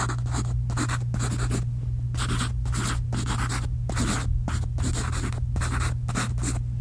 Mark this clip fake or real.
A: real